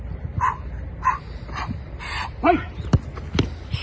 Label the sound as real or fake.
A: real